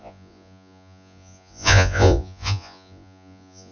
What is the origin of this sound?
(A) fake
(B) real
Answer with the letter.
A